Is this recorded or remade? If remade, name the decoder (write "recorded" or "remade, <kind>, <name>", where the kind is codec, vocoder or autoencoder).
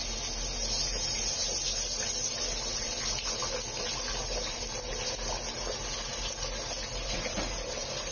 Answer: recorded